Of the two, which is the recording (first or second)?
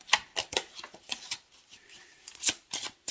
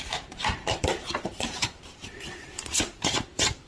first